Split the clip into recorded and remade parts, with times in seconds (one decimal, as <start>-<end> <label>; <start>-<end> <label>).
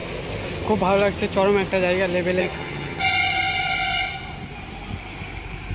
0.0-2.4 recorded; 2.4-3.0 remade; 3.0-5.7 recorded